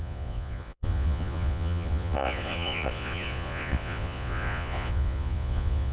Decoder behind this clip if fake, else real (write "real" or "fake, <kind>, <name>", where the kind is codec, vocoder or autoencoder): fake, vocoder, Vocos